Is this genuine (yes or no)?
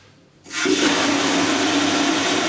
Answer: yes